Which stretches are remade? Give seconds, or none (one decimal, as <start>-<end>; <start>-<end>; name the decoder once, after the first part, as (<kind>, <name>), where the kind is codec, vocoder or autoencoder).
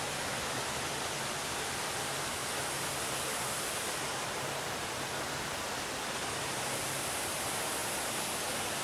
0.0-2.4 (vocoder, BigVGAN v2); 3.0-4.1; 6.8-7.8